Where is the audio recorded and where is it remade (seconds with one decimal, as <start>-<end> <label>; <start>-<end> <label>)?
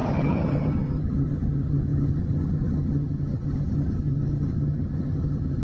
0.0-5.6 remade